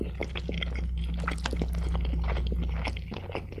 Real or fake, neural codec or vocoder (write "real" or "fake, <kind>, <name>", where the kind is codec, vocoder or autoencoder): real